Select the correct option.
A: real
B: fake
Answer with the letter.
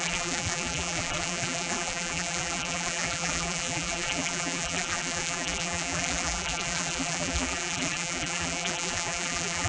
B